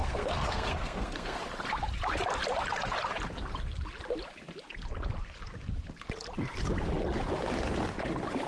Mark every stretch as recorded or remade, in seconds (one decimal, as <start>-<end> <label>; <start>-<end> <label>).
0.0-1.4 remade; 1.4-8.5 recorded